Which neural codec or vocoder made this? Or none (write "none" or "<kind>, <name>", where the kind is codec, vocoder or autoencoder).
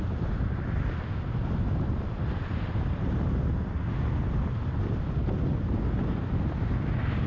none